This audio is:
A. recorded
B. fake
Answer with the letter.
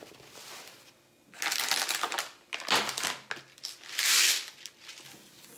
A